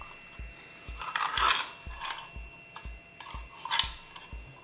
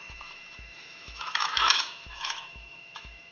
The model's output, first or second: second